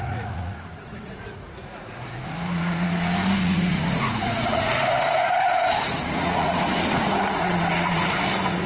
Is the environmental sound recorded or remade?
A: remade